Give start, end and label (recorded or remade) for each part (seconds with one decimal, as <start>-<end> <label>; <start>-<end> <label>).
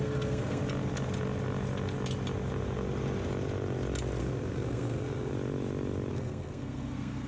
0.0-0.6 remade; 0.6-4.2 recorded; 4.2-5.3 remade; 5.3-6.1 recorded; 6.1-7.3 remade